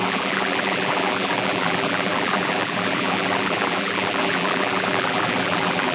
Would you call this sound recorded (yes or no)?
no